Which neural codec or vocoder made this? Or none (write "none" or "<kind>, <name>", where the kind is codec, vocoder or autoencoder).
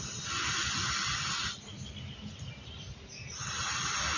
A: none